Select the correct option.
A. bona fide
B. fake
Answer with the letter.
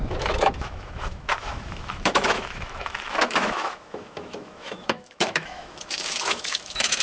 B